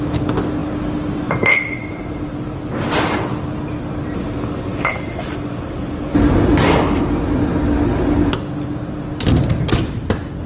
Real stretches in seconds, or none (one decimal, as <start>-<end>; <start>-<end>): 0.0-10.5

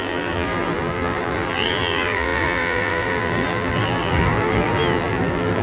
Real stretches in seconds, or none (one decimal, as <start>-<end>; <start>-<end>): none

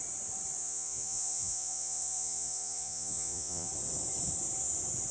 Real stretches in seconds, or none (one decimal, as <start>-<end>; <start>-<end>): 0.0-0.6; 3.7-5.1

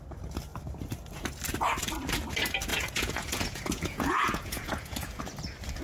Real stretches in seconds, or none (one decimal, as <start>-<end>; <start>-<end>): 0.0-2.7; 5.2-5.8

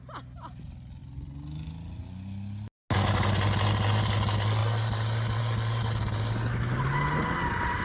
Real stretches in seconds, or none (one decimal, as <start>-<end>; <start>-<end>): 0.0-7.8